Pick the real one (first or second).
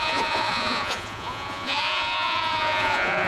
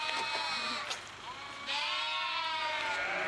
second